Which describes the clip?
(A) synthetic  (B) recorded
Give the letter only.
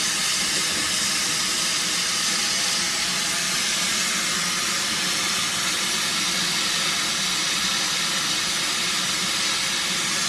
B